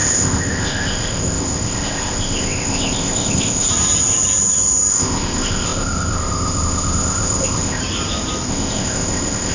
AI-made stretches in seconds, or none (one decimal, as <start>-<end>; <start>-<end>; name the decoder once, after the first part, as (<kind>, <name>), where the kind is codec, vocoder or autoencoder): 0.0-3.7 (codec, ZipCodec); 4.9-7.8; 8.5-9.5